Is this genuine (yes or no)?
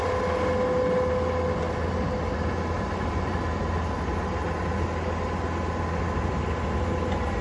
yes